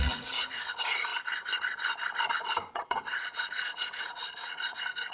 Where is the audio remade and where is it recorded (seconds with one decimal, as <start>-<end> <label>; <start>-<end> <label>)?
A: 0.0-1.1 remade; 1.1-2.7 recorded; 2.7-5.1 remade